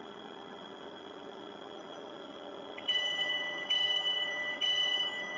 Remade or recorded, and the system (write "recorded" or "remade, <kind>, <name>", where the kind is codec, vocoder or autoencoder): remade, vocoder, HiFi-GAN